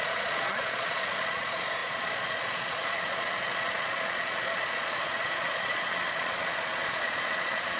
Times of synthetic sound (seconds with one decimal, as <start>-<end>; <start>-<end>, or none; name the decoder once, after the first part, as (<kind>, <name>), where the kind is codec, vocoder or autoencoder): 0.0-7.8 (vocoder, Vocos)